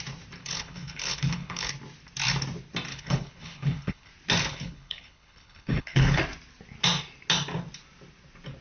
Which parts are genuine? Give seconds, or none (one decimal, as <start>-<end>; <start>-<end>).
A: 0.0-0.4; 1.7-2.9; 4.1-4.5; 6.2-8.6